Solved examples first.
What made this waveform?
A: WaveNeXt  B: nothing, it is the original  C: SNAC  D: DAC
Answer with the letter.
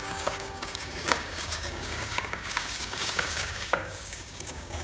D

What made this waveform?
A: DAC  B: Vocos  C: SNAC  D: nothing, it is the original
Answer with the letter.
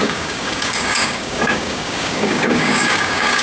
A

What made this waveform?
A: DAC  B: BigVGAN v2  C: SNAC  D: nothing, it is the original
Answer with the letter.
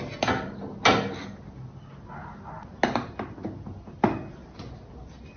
D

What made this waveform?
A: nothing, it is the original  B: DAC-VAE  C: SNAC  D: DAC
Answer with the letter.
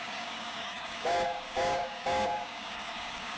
D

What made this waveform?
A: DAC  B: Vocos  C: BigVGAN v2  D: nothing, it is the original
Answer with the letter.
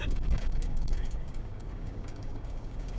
A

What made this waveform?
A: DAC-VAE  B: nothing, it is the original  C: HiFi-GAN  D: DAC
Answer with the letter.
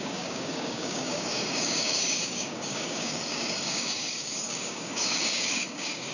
D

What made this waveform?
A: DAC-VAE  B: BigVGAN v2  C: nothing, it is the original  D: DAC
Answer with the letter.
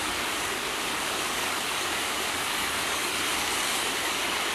D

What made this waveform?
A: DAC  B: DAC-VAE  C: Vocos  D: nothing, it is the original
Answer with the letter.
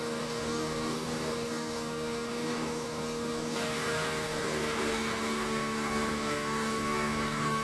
A